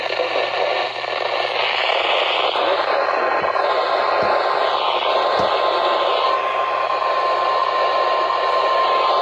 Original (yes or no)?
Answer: yes